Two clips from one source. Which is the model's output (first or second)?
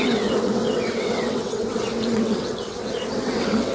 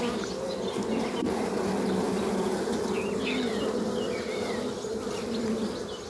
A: first